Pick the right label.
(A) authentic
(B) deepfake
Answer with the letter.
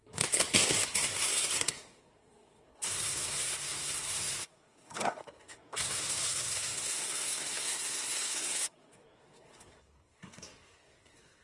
B